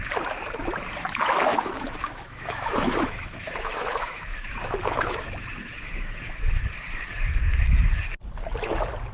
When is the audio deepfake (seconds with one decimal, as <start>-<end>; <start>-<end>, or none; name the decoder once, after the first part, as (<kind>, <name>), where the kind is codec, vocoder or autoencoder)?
1.5-6.6 (autoencoder, DAC-VAE)